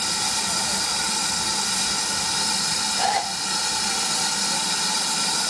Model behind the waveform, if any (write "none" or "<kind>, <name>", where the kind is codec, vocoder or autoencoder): none